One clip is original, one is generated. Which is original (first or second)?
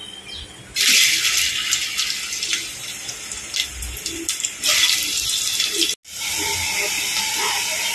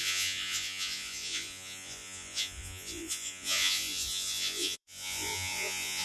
first